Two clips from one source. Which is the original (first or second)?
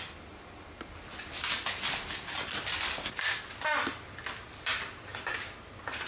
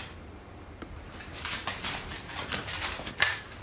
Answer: first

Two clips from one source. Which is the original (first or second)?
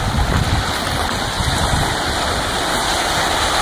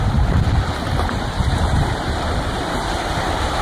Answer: first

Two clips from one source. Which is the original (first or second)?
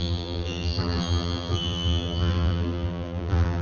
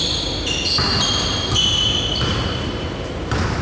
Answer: second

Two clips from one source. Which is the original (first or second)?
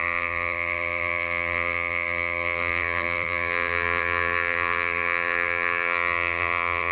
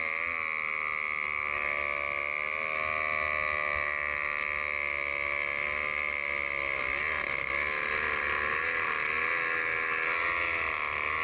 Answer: second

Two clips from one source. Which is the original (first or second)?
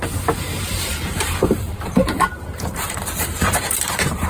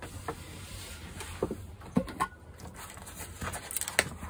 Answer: second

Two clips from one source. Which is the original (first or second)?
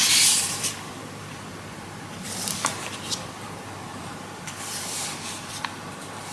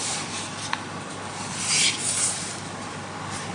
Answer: second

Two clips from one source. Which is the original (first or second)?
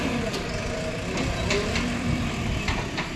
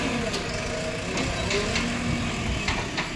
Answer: second